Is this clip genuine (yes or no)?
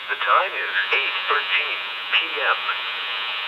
no